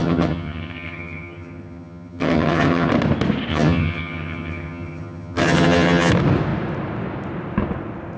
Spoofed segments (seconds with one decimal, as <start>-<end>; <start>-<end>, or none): 0.0-2.9; 3.5-6.1